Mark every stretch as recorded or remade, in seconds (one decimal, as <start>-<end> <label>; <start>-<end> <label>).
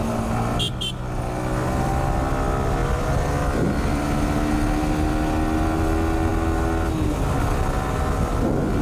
0.0-8.8 recorded